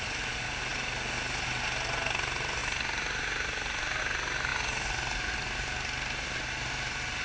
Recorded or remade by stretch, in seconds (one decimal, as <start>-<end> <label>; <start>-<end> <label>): 0.0-7.2 recorded